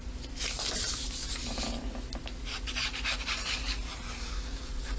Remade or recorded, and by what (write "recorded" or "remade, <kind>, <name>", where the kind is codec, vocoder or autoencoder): recorded